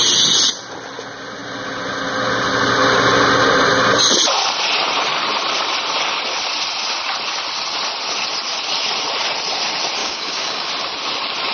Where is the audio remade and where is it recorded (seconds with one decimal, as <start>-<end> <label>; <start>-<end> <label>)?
0.0-10.0 recorded; 10.0-10.7 remade; 10.7-11.5 recorded